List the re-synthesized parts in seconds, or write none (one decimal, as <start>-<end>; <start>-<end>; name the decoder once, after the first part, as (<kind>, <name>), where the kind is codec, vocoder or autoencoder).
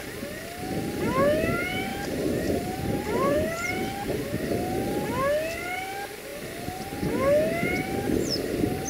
1.9-3.7 (vocoder, BigVGAN v2)